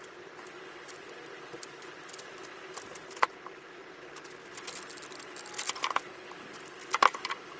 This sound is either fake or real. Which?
real